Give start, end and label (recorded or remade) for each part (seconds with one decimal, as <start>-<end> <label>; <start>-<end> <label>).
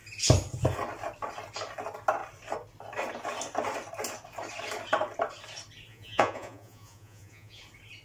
0.0-5.9 recorded; 5.9-7.6 remade; 7.6-8.0 recorded